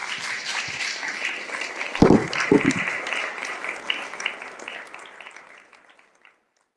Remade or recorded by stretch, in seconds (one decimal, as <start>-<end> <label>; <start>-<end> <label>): 0.0-0.8 remade; 0.8-2.2 recorded; 2.2-3.7 remade; 3.7-6.8 recorded